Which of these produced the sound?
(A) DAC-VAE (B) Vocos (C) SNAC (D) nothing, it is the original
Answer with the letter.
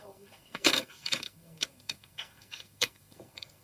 C